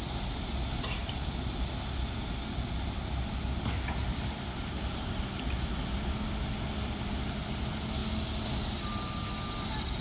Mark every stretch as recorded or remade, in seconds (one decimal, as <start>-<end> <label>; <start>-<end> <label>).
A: 0.0-10.0 recorded